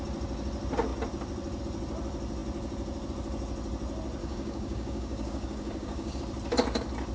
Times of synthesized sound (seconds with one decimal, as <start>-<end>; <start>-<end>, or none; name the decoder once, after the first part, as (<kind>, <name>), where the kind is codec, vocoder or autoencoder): 4.2-6.2 (codec, DAC)

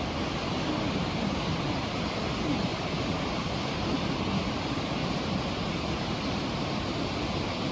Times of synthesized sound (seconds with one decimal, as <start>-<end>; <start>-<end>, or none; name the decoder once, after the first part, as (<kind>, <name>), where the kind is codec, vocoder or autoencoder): 2.7-3.8 (vocoder, BigVGAN v2)

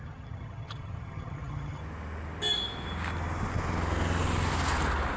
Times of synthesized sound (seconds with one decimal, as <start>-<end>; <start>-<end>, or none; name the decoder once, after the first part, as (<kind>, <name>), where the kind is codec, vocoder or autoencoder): 0.0-1.8 (vocoder, HiFi-GAN)

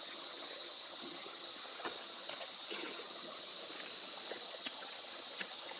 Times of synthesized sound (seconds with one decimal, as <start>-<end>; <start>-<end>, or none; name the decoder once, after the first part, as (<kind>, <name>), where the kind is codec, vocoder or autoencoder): 0.0-3.5 (vocoder, HiFi-GAN); 4.3-5.8